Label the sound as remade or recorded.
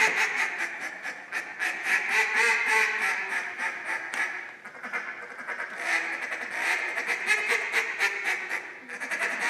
recorded